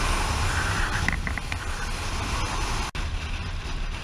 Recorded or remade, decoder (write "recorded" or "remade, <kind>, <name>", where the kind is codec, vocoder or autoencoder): recorded